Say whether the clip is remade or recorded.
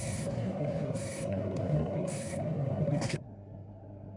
remade